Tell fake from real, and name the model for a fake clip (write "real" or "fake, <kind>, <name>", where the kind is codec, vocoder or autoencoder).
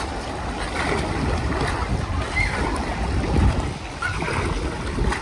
real